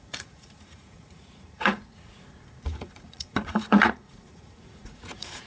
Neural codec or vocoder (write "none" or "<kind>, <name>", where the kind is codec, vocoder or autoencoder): vocoder, Vocos